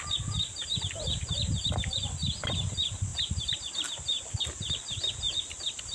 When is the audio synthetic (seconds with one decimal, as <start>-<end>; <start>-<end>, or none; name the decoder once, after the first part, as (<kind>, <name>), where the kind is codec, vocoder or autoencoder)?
none